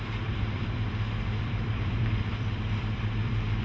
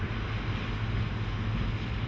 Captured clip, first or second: second